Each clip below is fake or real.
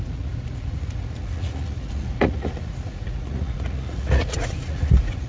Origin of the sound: fake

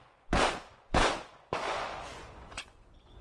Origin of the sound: fake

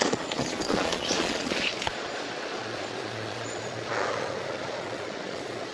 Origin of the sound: fake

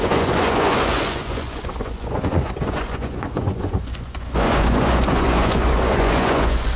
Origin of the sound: fake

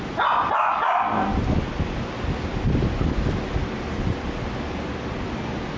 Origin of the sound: real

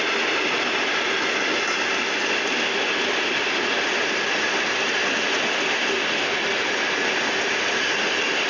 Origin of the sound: real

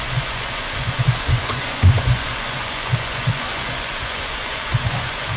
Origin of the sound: fake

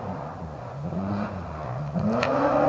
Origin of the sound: fake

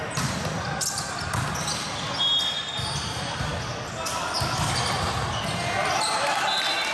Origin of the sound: real